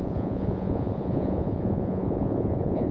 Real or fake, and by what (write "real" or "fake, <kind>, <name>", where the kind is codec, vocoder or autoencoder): fake, vocoder, Vocos